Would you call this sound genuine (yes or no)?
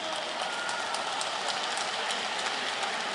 yes